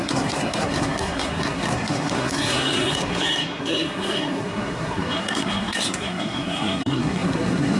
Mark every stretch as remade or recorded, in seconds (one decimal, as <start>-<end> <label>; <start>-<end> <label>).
0.0-7.8 remade